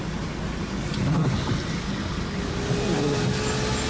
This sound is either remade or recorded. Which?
recorded